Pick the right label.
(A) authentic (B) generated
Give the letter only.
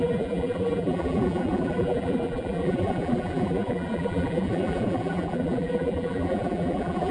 B